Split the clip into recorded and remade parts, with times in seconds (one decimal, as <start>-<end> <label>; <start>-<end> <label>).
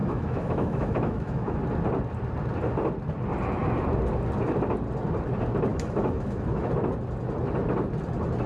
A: 0.0-1.6 remade; 1.6-5.7 recorded; 5.7-6.7 remade; 6.7-8.5 recorded